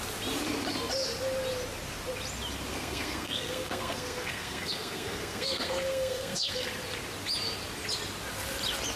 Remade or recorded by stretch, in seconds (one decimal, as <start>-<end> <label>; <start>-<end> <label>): 0.0-2.7 recorded; 2.7-6.7 remade; 6.7-9.0 recorded